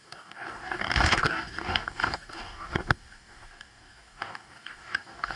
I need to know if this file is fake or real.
fake